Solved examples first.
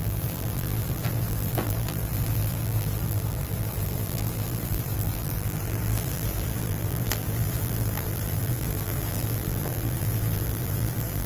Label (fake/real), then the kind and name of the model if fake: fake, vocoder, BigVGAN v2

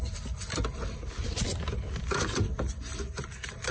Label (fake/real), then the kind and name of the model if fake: real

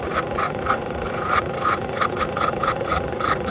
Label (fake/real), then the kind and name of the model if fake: fake, vocoder, Vocos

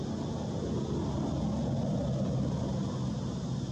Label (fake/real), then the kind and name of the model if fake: real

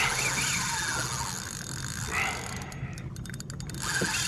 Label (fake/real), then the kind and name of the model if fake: real